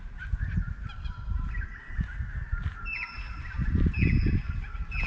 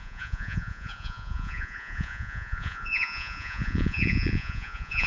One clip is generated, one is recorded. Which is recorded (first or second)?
first